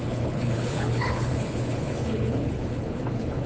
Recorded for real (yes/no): no